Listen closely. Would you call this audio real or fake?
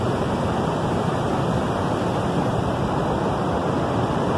real